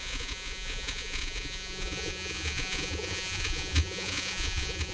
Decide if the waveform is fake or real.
fake